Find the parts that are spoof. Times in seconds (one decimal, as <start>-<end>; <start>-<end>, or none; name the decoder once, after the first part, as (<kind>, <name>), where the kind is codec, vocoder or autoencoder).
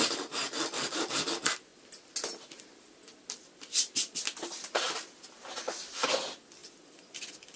0.0-1.7 (vocoder, BigVGAN v2); 5.2-7.6